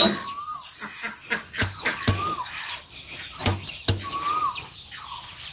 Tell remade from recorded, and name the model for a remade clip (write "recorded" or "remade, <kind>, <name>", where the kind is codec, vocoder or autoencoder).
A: recorded